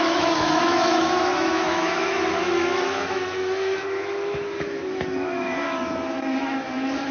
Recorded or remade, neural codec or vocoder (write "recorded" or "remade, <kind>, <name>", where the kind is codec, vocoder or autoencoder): remade, autoencoder, DAC-VAE